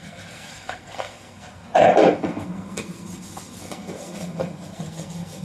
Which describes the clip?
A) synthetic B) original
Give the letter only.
A